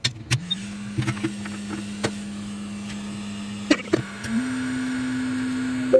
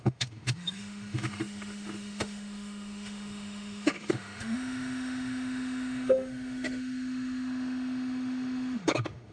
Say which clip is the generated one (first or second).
second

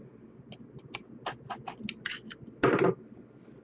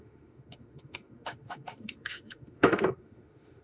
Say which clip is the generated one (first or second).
second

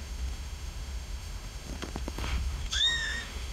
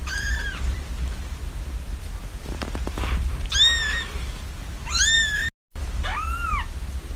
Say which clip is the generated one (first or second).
first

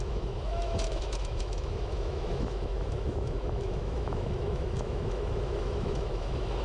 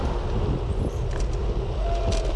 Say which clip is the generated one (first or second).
first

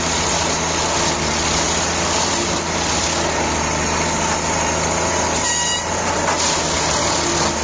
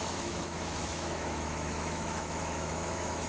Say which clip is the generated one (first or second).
second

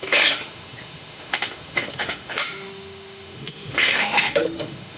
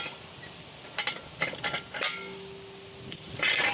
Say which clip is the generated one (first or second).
first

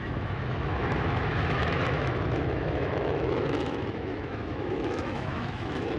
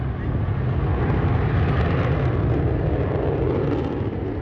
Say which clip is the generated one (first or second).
first